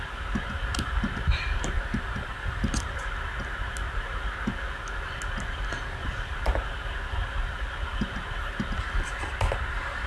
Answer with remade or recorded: recorded